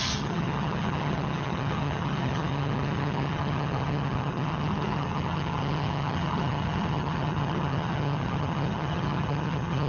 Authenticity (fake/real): fake